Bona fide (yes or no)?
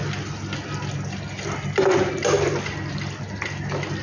yes